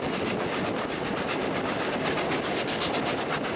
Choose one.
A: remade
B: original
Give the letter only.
B